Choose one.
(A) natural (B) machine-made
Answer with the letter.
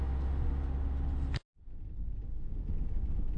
A